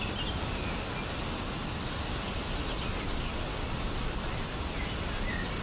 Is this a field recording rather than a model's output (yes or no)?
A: yes